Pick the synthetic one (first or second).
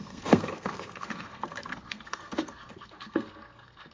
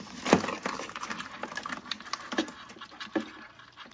first